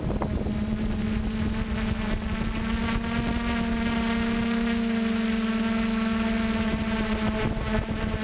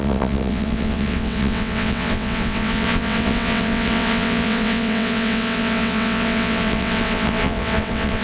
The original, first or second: first